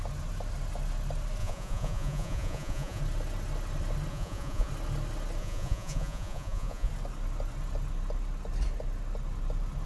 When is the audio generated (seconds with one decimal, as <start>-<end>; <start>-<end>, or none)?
1.4-3.0; 4.1-4.7; 5.4-6.9